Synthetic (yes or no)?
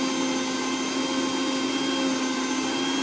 no